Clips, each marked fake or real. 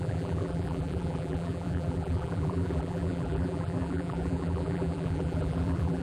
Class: fake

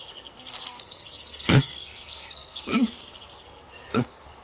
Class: fake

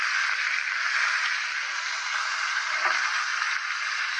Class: real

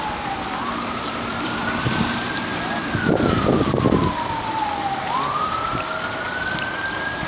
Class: fake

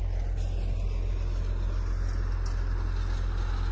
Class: real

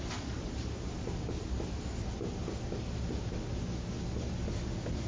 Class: real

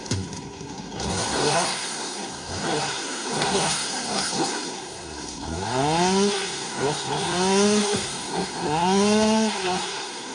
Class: fake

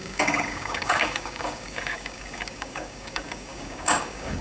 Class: fake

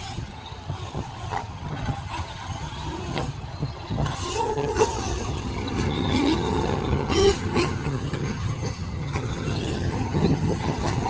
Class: fake